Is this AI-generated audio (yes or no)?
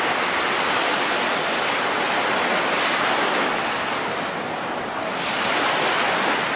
no